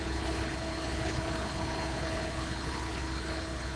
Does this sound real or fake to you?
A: fake